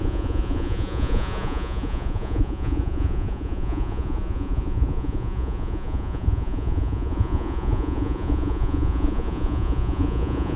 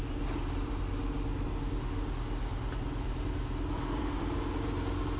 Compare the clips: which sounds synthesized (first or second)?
first